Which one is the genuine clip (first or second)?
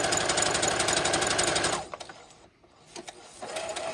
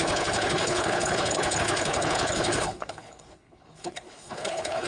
first